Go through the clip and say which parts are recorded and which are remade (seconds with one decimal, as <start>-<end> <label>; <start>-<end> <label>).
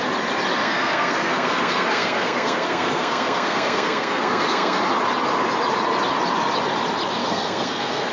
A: 0.0-0.6 recorded; 0.6-4.8 remade; 4.8-7.2 recorded; 7.2-8.1 remade